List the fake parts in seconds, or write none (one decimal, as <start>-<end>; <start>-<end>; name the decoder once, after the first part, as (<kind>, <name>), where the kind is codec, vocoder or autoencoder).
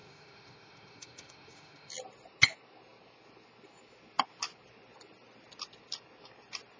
0.0-1.9 (autoencoder, DAC-VAE)